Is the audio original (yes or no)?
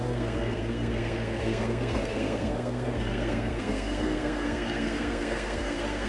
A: no